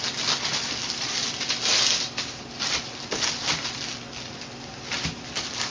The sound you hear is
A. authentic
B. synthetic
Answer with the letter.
A